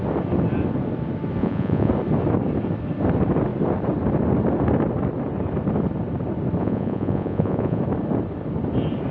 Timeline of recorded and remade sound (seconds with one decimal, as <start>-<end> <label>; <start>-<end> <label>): 0.0-1.4 recorded; 1.4-1.9 remade; 1.9-6.6 recorded; 6.6-7.8 remade; 7.8-9.1 recorded